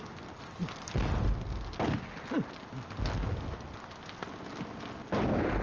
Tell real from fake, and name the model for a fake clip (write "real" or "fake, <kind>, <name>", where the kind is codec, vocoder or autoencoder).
real